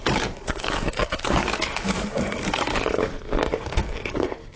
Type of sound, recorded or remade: remade